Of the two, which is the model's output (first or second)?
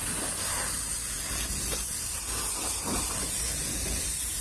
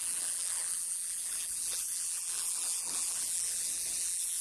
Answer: second